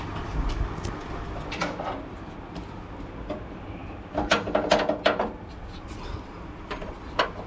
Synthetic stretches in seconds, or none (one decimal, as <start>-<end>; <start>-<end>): none